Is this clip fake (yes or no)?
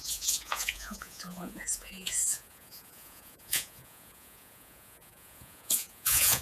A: yes